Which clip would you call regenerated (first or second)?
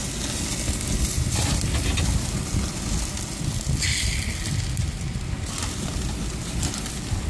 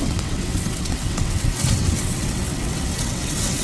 second